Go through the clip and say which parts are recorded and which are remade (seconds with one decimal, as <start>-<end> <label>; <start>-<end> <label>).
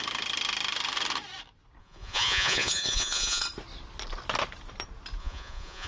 0.0-1.8 recorded; 1.8-3.4 remade; 3.4-5.2 recorded; 5.2-5.9 remade